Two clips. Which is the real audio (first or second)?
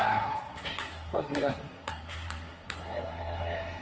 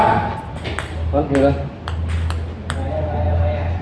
second